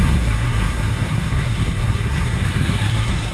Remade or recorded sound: remade